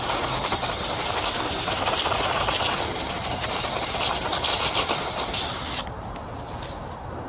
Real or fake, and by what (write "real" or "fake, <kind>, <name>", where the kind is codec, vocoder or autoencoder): real